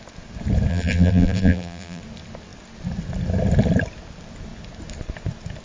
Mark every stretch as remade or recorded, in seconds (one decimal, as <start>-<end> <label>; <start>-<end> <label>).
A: 0.0-0.7 recorded; 0.7-2.0 remade; 2.0-5.6 recorded